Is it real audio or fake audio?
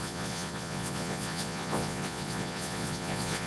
fake